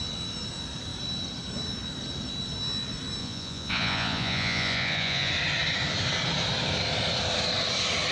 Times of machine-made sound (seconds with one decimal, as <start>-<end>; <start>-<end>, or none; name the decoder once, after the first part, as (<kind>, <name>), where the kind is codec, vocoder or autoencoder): 3.2-5.3 (vocoder, Vocos)